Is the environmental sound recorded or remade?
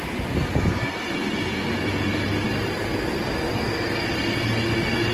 recorded